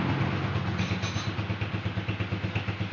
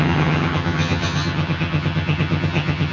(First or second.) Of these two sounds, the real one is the first